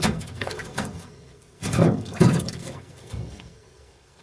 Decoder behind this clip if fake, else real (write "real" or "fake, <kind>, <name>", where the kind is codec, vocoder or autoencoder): fake, codec, SNAC